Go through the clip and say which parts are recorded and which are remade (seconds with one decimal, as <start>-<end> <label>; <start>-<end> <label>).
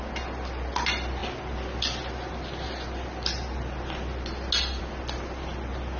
0.0-6.0 recorded